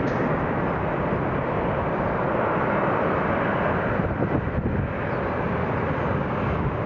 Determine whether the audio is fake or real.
real